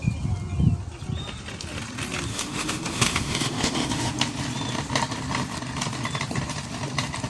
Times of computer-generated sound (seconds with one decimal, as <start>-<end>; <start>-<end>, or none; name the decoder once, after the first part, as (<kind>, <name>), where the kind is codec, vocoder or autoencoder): 2.3-4.1 (autoencoder, DAC-VAE)